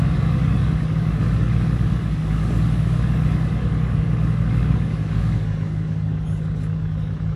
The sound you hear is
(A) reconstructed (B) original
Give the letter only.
A